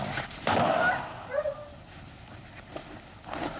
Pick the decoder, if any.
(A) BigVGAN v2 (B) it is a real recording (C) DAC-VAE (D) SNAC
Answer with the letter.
B